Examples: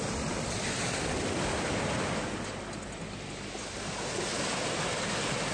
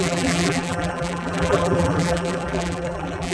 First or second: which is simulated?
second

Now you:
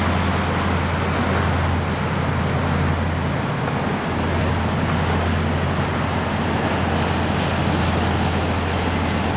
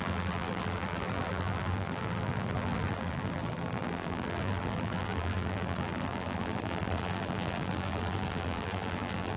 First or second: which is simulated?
second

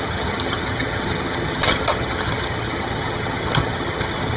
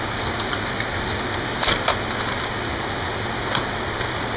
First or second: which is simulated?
first